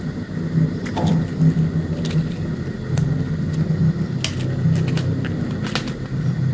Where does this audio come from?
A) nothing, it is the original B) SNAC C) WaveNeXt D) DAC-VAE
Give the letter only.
A